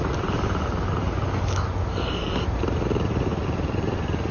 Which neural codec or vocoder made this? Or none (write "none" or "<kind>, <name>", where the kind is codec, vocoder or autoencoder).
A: none